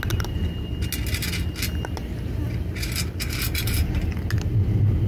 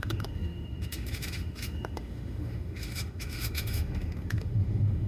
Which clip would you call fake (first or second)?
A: second